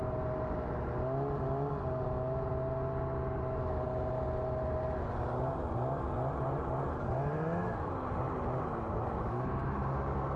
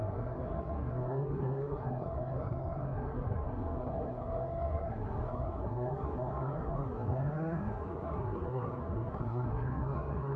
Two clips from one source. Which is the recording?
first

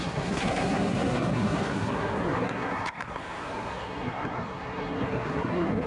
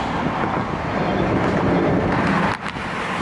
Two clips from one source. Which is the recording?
second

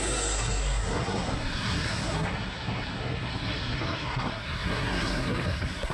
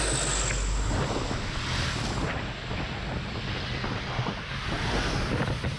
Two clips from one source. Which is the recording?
second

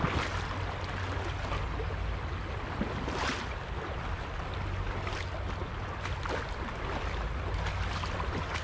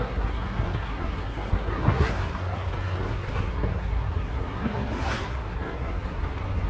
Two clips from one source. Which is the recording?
first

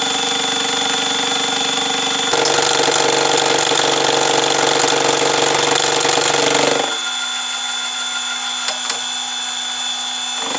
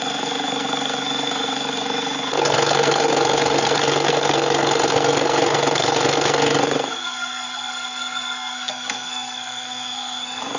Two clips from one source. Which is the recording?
first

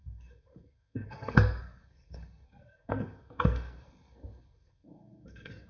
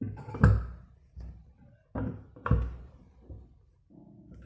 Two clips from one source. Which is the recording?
second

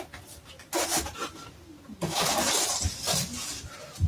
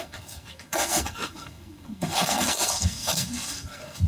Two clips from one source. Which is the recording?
first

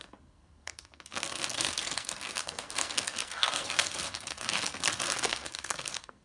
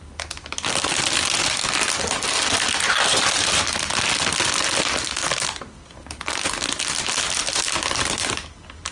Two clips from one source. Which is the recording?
second